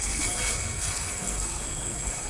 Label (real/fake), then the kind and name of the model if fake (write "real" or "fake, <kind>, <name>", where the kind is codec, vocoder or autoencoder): fake, codec, SNAC